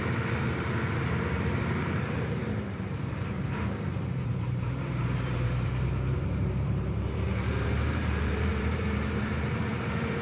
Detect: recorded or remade remade